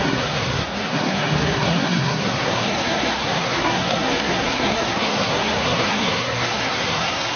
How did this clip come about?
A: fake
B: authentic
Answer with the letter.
A